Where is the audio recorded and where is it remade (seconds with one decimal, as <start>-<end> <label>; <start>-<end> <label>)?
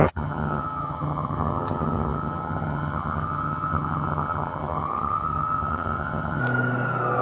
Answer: 0.0-6.4 remade; 6.4-7.2 recorded